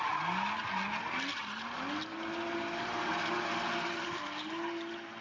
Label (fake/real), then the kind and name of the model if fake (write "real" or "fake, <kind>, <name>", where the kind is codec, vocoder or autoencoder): real